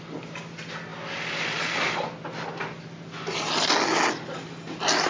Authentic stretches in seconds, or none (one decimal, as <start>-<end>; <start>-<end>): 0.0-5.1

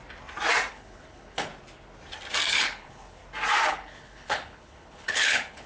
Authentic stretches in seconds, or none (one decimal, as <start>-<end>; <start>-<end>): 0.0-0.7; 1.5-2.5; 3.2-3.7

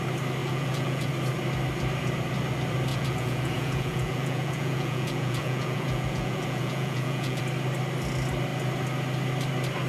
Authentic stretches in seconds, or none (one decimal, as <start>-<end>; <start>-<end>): 0.0-0.4; 1.1-2.9; 7.4-9.9